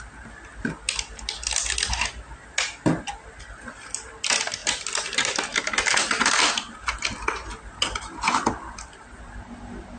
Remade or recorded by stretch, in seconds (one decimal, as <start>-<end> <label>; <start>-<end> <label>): 0.0-10.0 recorded